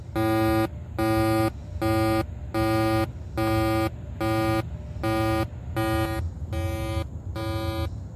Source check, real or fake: real